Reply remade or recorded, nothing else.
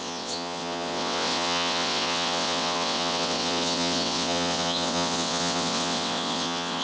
remade